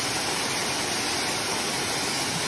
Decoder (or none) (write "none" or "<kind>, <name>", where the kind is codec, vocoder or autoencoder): none